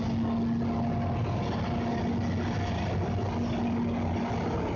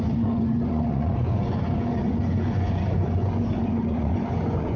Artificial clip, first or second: second